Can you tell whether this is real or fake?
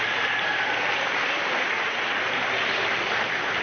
real